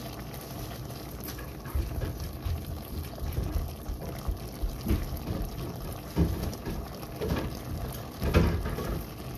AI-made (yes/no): no